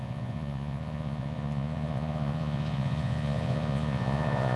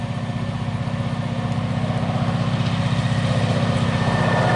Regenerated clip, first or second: first